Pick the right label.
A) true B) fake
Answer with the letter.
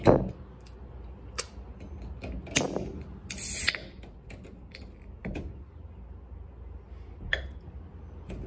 A